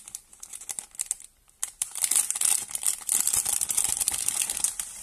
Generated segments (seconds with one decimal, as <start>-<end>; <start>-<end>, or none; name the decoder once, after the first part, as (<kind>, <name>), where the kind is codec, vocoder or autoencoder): 0.0-1.6 (vocoder, BigVGAN v2); 3.4-5.0